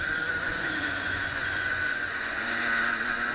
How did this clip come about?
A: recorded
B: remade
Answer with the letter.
B